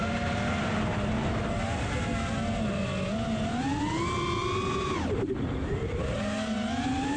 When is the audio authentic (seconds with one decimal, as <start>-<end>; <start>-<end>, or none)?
0.0-7.2